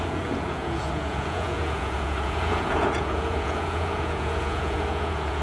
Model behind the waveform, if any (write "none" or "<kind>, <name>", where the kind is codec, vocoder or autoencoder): vocoder, Vocos